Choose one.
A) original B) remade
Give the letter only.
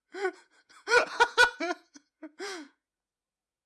B